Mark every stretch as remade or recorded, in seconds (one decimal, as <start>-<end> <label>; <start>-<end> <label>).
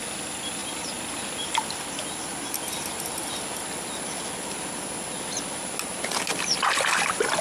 0.0-7.4 recorded